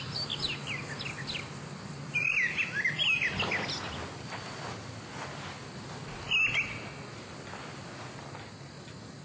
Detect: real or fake real